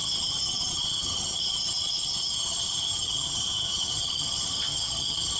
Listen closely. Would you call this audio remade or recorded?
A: remade